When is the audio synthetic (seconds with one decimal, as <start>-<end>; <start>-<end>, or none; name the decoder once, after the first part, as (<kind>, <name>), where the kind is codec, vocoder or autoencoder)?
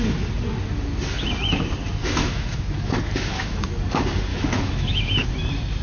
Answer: 2.0-3.7 (autoencoder, DAC-VAE); 4.3-5.1